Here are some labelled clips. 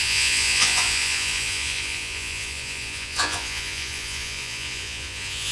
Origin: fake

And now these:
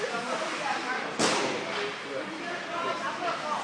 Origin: real